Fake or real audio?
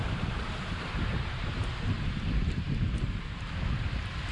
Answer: fake